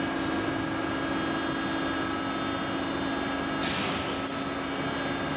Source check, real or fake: real